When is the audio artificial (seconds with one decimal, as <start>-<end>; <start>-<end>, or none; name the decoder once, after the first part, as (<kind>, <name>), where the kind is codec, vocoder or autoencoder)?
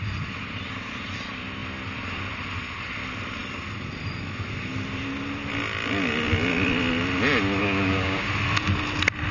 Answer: 7.6-8.3 (codec, DAC)